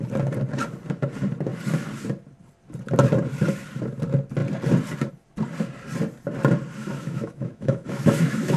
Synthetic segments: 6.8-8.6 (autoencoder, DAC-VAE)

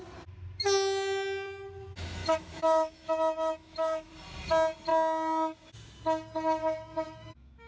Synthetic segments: 2.2-4.1 (autoencoder, DAC-VAE); 6.6-7.7

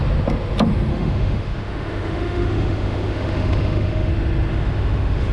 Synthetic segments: 0.9-4.1 (autoencoder, DAC-VAE); 4.5-5.3